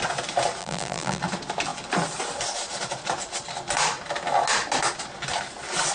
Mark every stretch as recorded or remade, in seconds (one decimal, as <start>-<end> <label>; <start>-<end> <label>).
0.0-0.6 recorded; 0.6-1.2 remade; 1.2-5.9 recorded